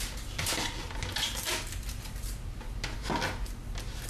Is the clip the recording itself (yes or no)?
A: yes